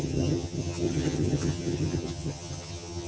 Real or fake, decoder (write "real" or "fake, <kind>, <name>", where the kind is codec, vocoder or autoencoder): fake, vocoder, HiFi-GAN